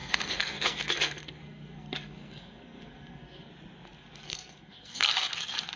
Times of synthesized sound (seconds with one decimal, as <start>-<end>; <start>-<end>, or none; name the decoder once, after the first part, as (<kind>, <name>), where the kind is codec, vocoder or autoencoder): 0.0-3.5 (codec, SNAC); 4.0-5.8